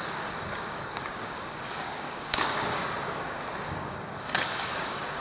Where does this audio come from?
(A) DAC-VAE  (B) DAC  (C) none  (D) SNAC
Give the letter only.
B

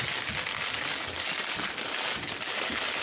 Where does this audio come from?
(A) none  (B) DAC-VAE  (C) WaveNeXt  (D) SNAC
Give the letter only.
A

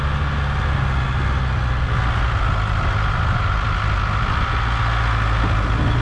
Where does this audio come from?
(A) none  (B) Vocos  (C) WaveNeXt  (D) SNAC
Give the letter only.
A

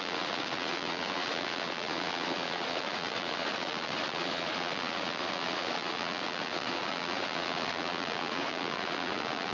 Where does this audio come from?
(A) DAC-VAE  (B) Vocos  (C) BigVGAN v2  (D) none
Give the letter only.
B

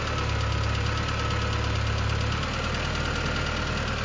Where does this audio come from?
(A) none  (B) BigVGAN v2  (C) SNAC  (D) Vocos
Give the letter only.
A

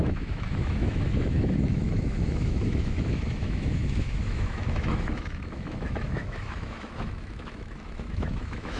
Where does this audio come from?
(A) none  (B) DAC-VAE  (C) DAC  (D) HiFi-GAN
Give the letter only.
B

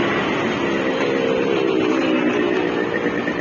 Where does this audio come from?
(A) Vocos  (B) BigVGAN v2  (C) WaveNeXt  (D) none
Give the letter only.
D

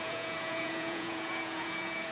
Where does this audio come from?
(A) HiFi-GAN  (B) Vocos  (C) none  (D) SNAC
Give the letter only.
B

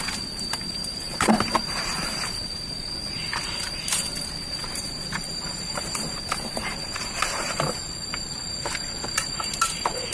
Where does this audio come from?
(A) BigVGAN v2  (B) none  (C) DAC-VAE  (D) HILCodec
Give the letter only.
A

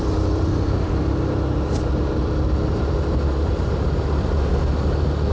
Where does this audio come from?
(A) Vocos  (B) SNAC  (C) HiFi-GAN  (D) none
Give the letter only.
D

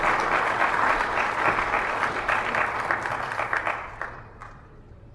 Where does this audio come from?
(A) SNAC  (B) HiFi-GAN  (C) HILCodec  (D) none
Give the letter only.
D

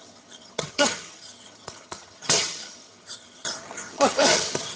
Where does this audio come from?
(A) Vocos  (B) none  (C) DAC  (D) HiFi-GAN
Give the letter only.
D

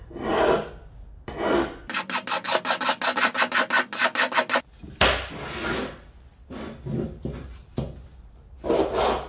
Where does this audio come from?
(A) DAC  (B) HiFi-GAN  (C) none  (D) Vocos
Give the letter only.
C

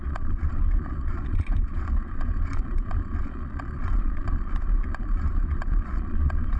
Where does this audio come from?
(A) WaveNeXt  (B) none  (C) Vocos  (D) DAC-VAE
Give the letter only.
C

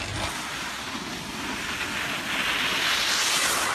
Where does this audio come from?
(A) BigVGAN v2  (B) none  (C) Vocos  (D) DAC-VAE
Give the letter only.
B